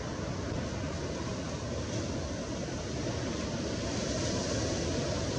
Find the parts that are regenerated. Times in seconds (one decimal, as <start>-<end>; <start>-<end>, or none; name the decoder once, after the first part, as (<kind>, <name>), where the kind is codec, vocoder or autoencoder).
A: none